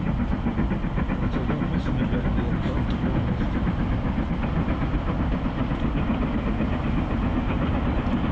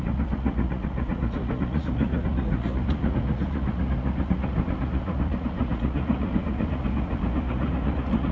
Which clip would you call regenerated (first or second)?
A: second